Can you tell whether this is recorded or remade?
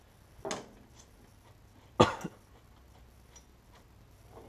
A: recorded